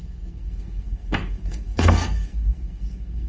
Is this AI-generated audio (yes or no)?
yes